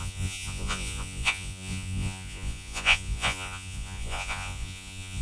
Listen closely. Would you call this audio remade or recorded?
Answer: remade